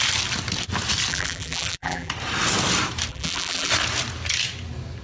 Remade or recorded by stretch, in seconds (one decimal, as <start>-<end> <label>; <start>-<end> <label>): 0.0-1.1 recorded; 1.1-2.1 remade; 2.1-3.1 recorded; 3.1-3.7 remade; 3.7-5.0 recorded